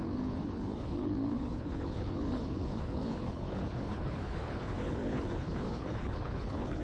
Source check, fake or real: fake